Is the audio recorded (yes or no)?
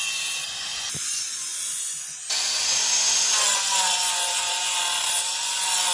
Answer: no